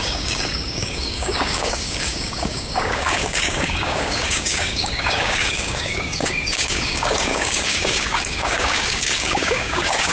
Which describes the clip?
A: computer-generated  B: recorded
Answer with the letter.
A